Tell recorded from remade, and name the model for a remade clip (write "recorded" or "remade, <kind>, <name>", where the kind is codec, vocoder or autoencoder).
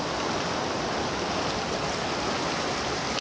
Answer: recorded